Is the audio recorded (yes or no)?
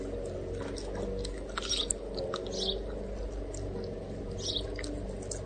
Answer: yes